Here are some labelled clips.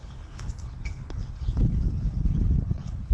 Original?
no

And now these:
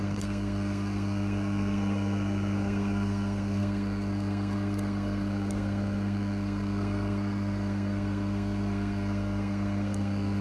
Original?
no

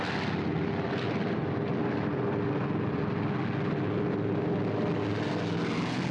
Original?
yes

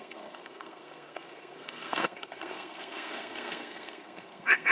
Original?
no